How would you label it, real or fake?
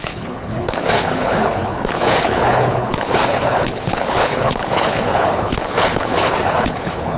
fake